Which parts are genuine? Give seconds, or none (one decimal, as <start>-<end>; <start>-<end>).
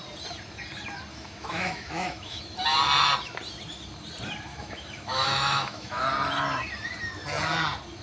0.0-1.1; 2.4-4.5; 6.0-8.0